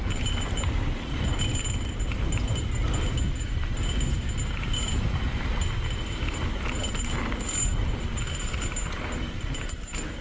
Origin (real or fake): real